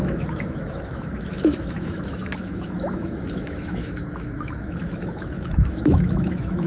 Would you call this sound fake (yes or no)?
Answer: yes